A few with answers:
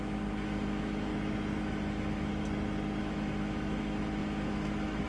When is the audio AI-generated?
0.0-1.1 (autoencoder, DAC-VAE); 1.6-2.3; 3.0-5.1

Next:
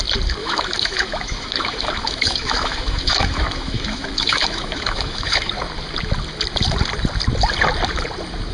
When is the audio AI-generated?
0.4-5.5 (autoencoder, DAC-VAE)

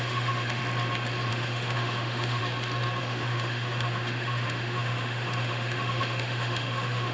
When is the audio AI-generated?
0.0-0.6 (autoencoder, DAC-VAE); 1.3-2.4; 3.0-7.1